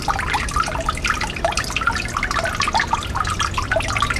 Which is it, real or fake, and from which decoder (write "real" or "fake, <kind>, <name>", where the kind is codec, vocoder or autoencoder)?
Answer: real